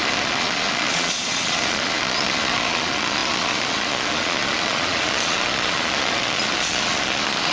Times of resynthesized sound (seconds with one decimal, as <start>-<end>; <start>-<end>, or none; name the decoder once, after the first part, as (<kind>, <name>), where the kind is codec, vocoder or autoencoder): 0.0-7.5 (vocoder, Vocos)

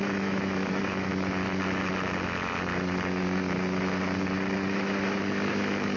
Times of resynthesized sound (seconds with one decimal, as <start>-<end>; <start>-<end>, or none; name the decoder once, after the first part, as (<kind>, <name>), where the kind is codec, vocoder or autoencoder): 0.0-1.1 (autoencoder, DAC-VAE); 4.7-6.0

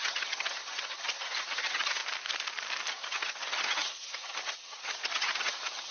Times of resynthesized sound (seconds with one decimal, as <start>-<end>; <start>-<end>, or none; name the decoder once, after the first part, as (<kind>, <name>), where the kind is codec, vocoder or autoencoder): 0.0-2.0 (vocoder, HiFi-GAN); 2.9-5.9

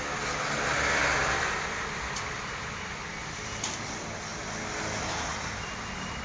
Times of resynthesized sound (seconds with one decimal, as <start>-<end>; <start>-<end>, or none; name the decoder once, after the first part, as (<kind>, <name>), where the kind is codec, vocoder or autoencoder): 1.2-3.8 (vocoder, BigVGAN v2)

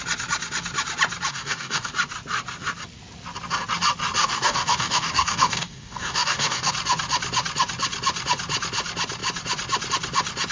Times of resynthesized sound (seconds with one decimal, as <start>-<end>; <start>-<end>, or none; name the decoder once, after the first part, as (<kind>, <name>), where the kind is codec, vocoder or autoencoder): 1.3-1.9 (codec, DAC); 4.2-6.7

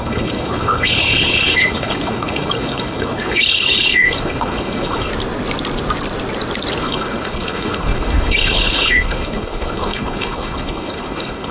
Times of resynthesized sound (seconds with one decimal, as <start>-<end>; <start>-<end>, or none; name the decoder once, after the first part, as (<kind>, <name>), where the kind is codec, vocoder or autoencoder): 0.0-5.1 (codec, HILCodec); 6.8-11.5

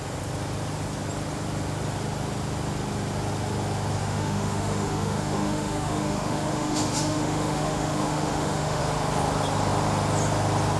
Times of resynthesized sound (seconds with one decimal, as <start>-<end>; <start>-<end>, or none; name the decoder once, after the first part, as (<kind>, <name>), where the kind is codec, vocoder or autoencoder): 4.0-8.8 (autoencoder, DAC-VAE)

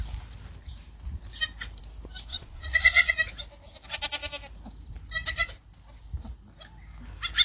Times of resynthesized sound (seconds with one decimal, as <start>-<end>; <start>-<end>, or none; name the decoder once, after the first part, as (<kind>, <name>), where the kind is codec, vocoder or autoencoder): 2.3-3.1 (vocoder, Vocos)